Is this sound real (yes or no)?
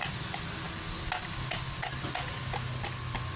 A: yes